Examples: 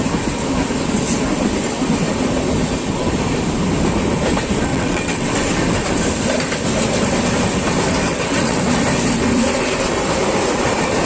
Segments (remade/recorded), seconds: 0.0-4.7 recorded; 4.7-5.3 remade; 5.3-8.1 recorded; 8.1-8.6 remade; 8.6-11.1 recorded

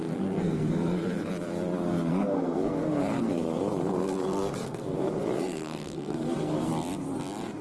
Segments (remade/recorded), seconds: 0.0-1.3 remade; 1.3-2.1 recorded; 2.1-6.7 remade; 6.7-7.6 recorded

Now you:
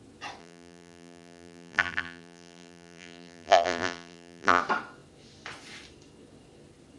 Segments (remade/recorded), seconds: 0.0-0.4 recorded; 0.4-4.6 remade; 4.6-7.0 recorded

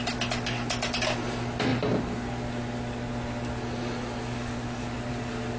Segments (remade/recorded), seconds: 0.0-5.6 recorded